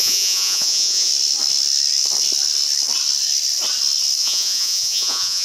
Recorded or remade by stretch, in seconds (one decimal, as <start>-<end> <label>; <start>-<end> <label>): 0.0-1.1 remade; 1.1-4.2 recorded; 4.2-5.4 remade